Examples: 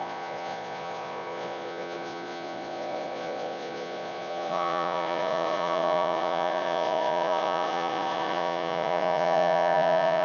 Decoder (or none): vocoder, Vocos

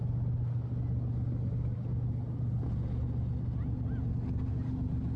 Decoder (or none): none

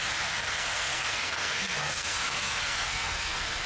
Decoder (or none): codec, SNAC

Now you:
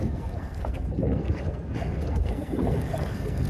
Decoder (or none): codec, SNAC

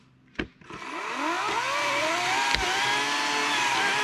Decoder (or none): none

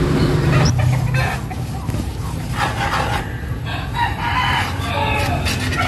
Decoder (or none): none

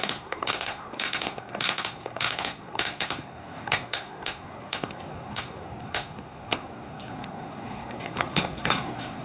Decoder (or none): codec, SNAC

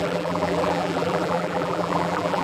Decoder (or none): vocoder, BigVGAN v2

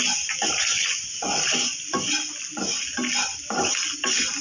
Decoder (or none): none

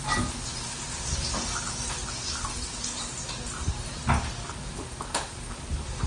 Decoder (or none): none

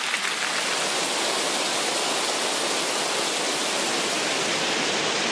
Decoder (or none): none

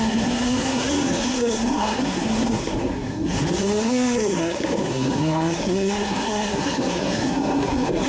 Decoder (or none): codec, SNAC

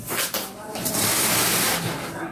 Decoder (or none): none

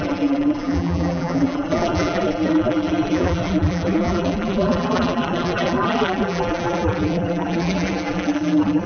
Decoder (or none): vocoder, BigVGAN v2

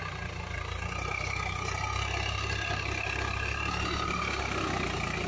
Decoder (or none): none